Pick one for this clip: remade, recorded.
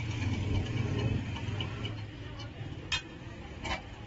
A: recorded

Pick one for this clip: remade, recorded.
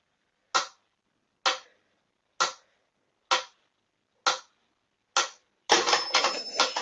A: recorded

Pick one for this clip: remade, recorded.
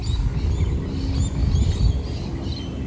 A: recorded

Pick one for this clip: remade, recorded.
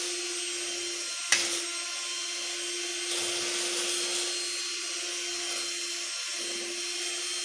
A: recorded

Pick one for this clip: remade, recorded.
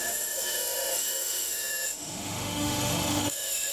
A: remade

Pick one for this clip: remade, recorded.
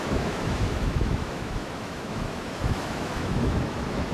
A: remade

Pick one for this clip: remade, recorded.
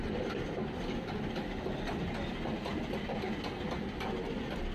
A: recorded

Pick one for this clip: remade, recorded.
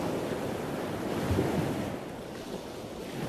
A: recorded